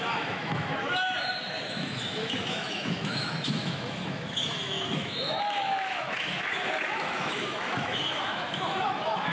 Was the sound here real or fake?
fake